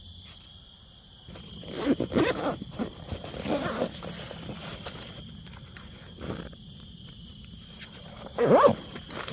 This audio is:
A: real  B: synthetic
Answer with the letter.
A